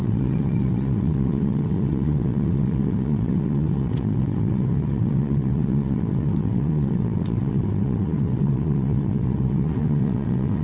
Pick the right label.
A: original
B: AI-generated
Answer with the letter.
B